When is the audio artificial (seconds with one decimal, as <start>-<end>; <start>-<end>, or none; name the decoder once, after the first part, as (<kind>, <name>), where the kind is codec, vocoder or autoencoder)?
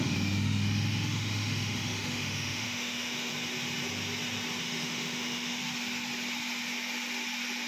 0.0-3.3 (autoencoder, DAC-VAE); 4.6-5.6